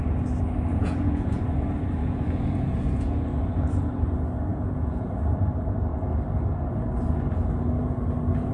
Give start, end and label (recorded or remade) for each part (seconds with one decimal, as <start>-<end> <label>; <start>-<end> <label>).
0.0-0.7 recorded; 0.7-1.4 remade; 1.4-2.0 recorded; 2.0-3.2 remade; 3.2-4.5 recorded; 4.5-5.1 remade; 5.1-8.5 recorded